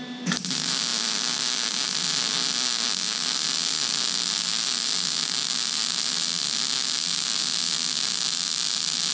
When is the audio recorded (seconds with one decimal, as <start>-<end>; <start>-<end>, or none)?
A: 0.0-9.1